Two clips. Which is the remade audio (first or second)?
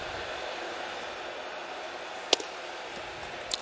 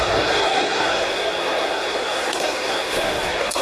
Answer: second